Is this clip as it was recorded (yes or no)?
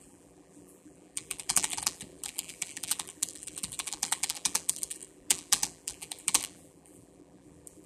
no